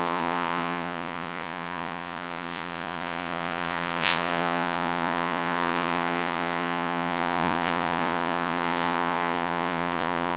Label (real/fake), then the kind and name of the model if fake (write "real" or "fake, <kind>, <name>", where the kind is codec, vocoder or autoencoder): fake, vocoder, Vocos